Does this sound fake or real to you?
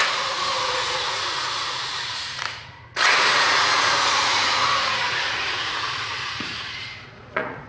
fake